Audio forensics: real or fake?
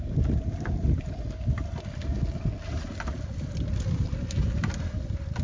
real